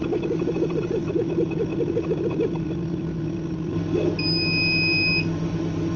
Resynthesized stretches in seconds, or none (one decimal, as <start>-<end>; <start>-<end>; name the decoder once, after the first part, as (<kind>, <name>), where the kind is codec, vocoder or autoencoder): none